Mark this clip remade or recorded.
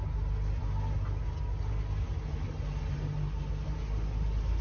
recorded